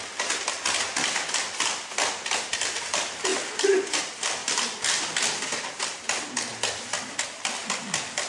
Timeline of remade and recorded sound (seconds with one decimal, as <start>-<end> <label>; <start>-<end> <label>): 0.0-8.3 recorded